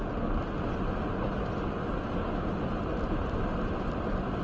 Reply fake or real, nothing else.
real